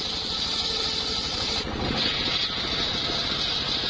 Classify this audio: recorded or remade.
recorded